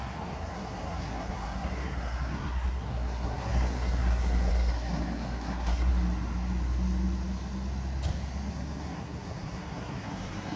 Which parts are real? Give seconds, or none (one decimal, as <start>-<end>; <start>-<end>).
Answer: 5.9-8.5